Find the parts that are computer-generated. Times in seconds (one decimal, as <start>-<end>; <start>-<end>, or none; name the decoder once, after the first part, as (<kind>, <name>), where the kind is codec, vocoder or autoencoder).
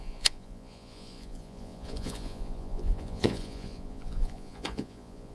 0.0-5.3 (vocoder, Vocos)